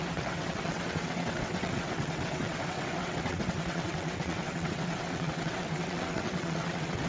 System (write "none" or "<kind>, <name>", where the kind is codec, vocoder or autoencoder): vocoder, WaveNeXt